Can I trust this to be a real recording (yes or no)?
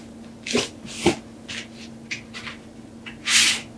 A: yes